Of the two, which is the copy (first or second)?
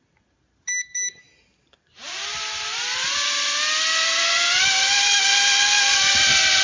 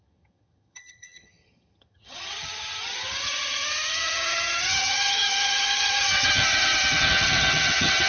second